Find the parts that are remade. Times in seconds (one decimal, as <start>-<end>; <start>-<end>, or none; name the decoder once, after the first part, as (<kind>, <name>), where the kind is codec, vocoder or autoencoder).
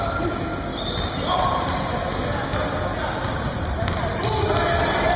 0.7-1.8 (vocoder, BigVGAN v2)